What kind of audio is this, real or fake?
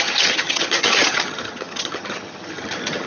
fake